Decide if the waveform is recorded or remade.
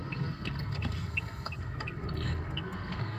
remade